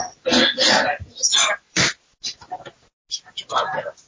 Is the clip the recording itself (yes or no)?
yes